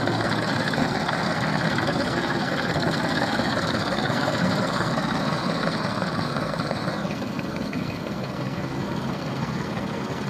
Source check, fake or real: fake